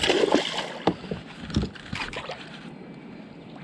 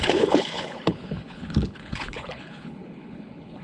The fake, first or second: second